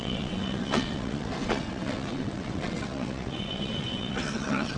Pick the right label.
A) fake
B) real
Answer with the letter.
A